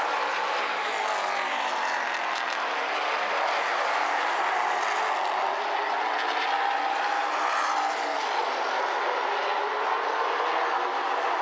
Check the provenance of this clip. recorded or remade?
recorded